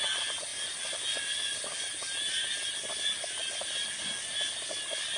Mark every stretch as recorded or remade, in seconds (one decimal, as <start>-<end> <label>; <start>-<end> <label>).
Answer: 0.0-5.2 recorded